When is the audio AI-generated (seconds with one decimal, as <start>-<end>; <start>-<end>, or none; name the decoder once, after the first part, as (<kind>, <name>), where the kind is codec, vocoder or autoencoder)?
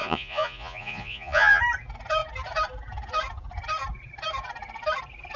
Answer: 0.0-1.6 (vocoder, Vocos)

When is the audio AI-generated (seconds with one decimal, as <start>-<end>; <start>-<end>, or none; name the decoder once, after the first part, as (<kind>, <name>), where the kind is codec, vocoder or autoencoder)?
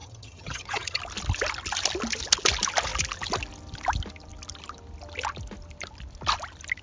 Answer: 0.0-1.0 (vocoder, HiFi-GAN)